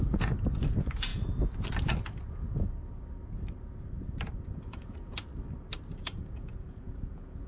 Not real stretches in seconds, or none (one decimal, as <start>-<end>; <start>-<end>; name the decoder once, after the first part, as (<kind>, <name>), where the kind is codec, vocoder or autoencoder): 0.0-1.1 (vocoder, Vocos); 4.6-5.3; 6.0-7.5